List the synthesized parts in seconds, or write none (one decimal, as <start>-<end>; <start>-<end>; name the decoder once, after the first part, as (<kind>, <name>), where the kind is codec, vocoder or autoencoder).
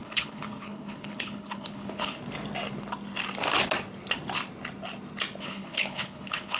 0.0-2.2 (codec, HILCodec); 5.4-6.6